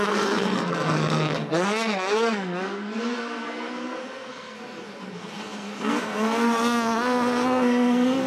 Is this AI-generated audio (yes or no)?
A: yes